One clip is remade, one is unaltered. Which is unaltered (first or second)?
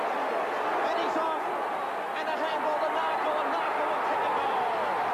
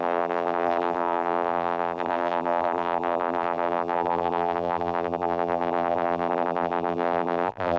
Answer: first